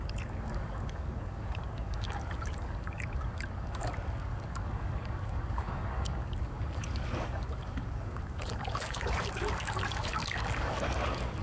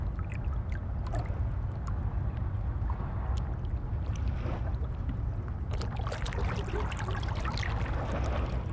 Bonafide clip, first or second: second